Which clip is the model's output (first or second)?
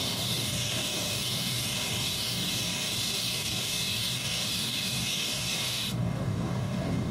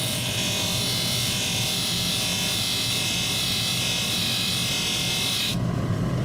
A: first